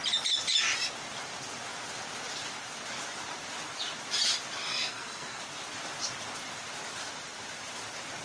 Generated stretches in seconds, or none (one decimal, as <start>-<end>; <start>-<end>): 4.7-5.4